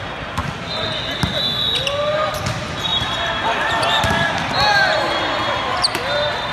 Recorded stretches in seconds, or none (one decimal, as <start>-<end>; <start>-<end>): 0.0-6.5